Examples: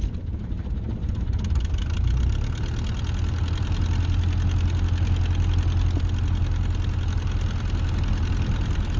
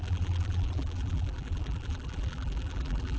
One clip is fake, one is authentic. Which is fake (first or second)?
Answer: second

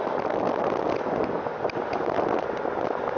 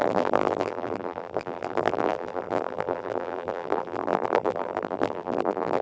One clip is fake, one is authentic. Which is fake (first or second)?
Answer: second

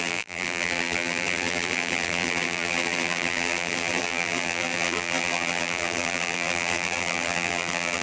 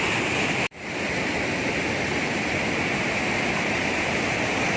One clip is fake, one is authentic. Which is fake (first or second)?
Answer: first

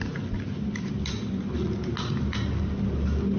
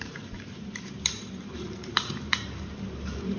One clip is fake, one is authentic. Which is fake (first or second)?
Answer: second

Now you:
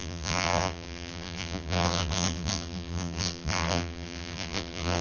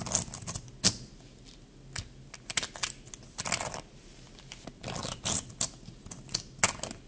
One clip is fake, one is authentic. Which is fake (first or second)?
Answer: first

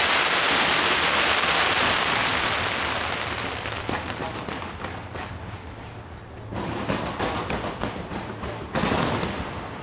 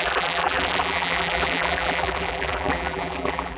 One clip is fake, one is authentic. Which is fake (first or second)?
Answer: second